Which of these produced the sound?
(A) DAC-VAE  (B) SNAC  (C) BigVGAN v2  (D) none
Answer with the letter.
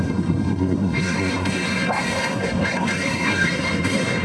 B